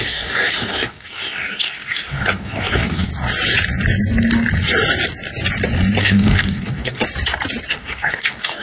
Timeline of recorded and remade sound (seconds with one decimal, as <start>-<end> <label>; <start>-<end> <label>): 0.0-3.1 remade; 3.1-6.0 recorded; 6.0-7.0 remade; 7.0-7.7 recorded; 7.7-8.6 remade